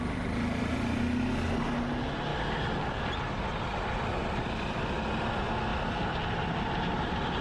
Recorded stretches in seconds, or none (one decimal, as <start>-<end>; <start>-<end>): 0.0-2.3; 3.1-4.2; 5.1-5.7; 6.9-7.4